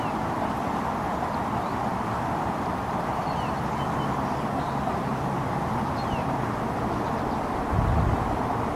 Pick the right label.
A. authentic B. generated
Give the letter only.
A